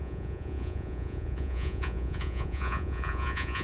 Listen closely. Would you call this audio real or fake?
fake